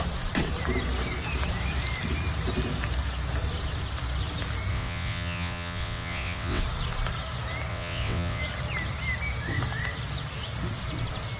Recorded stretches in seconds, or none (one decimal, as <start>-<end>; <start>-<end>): 0.0-4.7; 6.6-7.7; 8.4-11.4

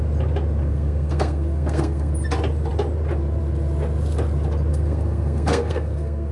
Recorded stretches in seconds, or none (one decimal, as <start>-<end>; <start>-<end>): 0.0-0.6; 2.1-4.7